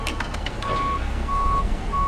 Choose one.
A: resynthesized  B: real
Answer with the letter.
A